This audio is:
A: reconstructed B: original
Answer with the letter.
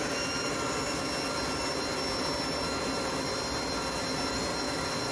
B